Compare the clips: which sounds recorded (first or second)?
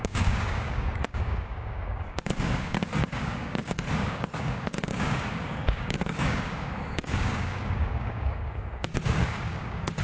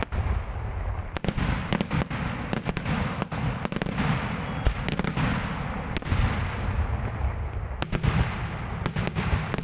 second